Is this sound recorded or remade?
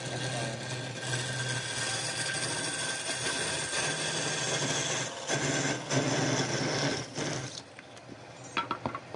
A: recorded